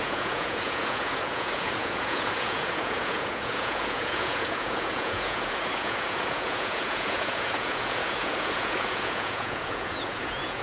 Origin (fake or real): fake